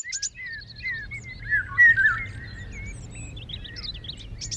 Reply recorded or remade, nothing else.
recorded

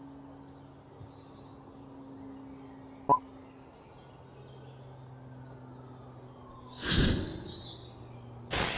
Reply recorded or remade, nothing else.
recorded